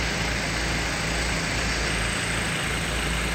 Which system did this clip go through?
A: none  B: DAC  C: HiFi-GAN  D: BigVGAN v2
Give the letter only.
A